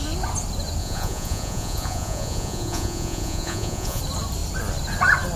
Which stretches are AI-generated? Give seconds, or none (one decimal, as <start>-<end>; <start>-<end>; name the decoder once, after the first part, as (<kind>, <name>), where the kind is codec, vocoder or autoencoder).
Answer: 0.8-4.0 (vocoder, Vocos)